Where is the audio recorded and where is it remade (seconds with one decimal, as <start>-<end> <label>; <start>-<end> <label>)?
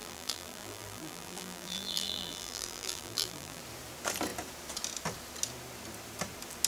0.0-3.6 remade; 3.6-6.7 recorded